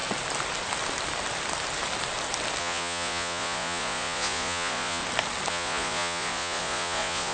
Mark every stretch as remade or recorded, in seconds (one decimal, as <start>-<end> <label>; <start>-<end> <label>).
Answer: 0.0-2.6 recorded; 2.6-5.0 remade; 5.0-5.5 recorded; 5.5-7.3 remade